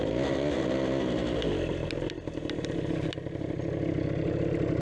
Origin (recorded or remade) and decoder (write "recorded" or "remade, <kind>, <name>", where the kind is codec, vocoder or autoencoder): recorded